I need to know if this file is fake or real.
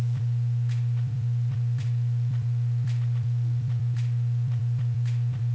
fake